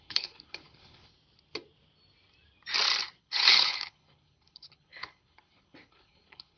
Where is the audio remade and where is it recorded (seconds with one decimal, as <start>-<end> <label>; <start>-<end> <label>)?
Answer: 0.0-1.1 remade; 1.1-3.2 recorded; 3.2-6.6 remade

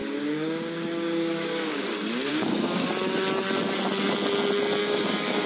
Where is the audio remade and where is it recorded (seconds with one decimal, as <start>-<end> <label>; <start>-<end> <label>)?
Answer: 0.0-1.8 remade; 1.8-2.3 recorded; 2.3-2.9 remade; 2.9-4.8 recorded; 4.8-5.5 remade

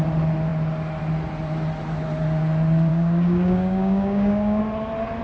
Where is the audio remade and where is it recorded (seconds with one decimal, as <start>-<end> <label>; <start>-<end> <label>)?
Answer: 0.0-2.9 recorded; 2.9-4.6 remade; 4.6-5.2 recorded

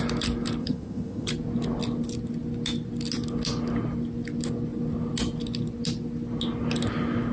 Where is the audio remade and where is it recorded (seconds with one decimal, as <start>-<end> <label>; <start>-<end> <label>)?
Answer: 0.0-0.6 recorded; 0.6-1.3 remade; 1.3-7.3 recorded

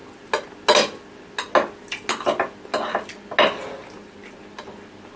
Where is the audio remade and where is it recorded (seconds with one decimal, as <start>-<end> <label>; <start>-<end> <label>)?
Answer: 0.0-5.2 recorded

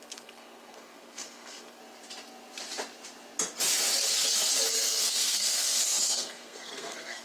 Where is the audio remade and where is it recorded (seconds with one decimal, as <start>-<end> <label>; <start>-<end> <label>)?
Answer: 0.0-1.8 remade; 1.8-4.7 recorded; 4.7-7.2 remade

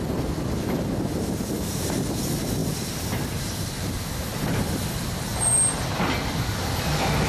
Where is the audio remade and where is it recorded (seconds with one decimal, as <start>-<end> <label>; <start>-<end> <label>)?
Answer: 0.0-7.3 recorded